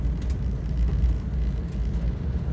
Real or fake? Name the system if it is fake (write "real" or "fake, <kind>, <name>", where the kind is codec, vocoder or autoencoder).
real